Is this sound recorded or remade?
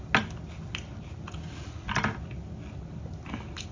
recorded